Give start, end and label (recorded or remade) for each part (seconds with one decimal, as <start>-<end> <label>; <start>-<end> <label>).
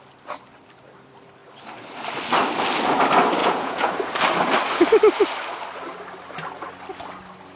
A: 0.0-3.4 recorded; 3.4-3.9 remade; 3.9-7.6 recorded